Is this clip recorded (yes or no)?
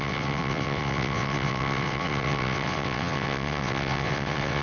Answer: no